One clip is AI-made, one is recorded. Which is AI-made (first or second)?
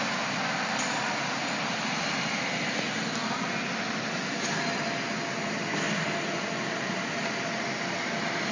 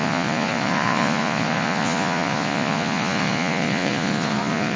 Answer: second